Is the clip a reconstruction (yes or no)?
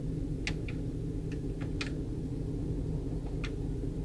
no